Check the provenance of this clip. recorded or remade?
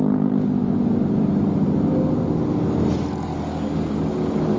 recorded